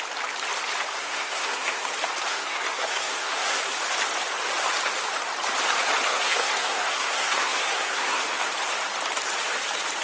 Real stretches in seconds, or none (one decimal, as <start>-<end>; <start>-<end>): 0.0-0.9; 1.9-2.3; 3.6-6.1; 8.2-10.0